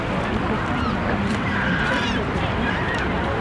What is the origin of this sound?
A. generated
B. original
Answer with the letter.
A